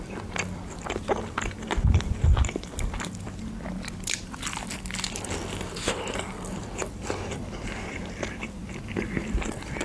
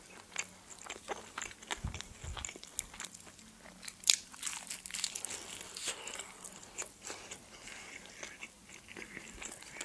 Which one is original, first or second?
second